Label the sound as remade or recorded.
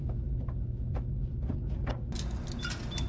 recorded